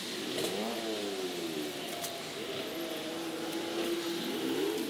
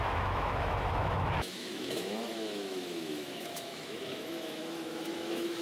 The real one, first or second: first